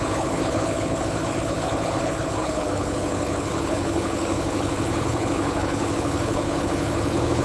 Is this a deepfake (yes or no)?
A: yes